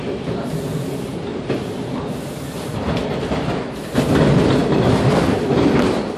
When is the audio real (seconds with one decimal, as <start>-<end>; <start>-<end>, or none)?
0.0-1.3; 2.0-3.0; 3.6-4.6; 5.5-6.2